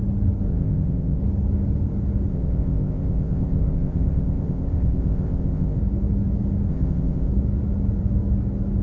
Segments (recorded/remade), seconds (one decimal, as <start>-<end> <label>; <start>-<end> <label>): 0.0-0.5 recorded; 0.5-1.2 remade; 1.2-2.3 recorded; 2.3-5.8 remade; 5.8-6.7 recorded; 6.7-7.3 remade; 7.3-8.8 recorded